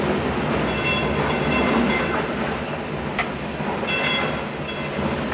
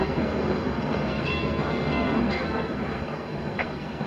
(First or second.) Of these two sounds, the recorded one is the first